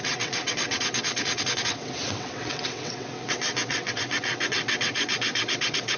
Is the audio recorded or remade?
remade